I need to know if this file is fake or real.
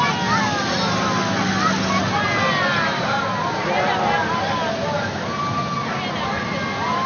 real